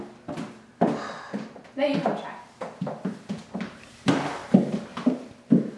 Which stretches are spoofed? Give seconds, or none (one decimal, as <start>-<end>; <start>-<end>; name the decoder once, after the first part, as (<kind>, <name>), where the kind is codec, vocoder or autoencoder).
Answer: none